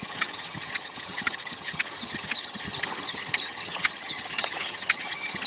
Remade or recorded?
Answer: remade